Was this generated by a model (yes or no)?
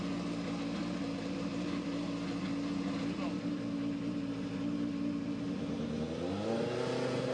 no